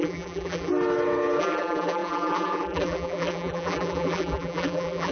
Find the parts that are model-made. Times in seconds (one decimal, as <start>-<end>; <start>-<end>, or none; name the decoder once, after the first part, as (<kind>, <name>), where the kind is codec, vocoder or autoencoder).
0.0-0.7 (vocoder, BigVGAN v2); 1.4-5.1